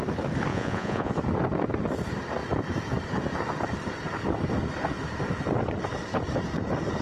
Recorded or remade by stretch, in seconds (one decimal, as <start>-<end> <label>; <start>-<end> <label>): 0.0-0.5 recorded; 0.5-1.1 remade; 1.1-7.0 recorded